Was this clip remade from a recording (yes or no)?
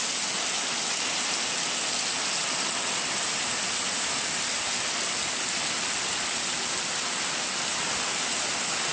no